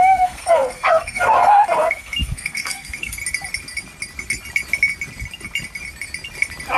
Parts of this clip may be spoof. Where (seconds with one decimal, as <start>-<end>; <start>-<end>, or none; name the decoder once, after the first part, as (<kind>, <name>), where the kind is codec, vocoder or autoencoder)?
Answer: 0.0-3.2 (codec, SNAC)

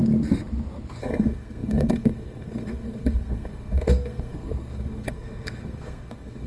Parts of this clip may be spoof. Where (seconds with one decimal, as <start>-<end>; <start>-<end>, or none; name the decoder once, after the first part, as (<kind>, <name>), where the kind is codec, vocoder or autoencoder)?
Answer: 1.0-6.5 (codec, SNAC)

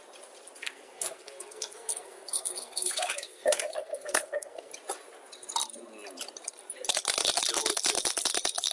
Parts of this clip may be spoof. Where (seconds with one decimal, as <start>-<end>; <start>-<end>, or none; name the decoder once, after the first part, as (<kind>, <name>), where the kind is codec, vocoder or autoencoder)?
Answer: 0.6-4.7 (codec, SNAC)